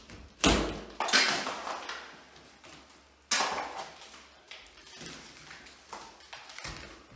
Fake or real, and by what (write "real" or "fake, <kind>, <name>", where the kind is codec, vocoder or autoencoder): real